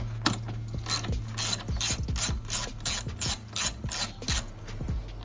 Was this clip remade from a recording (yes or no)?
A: no